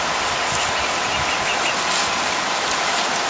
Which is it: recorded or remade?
recorded